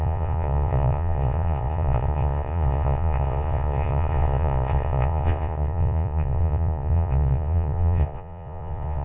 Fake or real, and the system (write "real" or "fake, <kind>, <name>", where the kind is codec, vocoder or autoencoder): fake, vocoder, Vocos